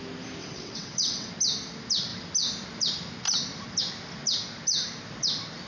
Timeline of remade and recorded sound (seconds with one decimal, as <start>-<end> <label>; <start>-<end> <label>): 0.0-0.4 recorded; 0.4-1.3 remade; 1.3-5.7 recorded